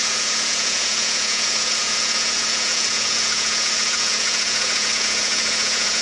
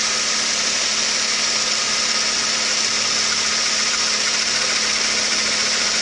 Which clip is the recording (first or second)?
second